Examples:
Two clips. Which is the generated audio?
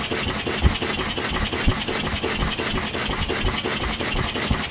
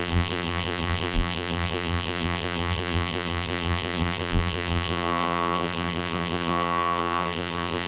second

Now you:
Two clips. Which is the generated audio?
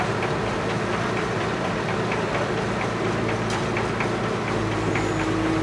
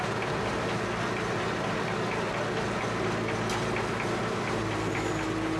first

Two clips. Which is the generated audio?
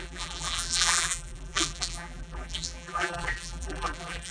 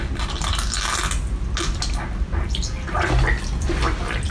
first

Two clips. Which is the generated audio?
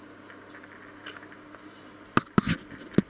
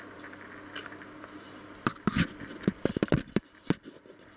second